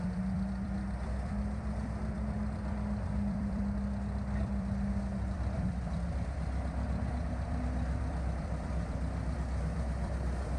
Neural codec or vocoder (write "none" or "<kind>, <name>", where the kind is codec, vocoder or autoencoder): vocoder, BigVGAN v2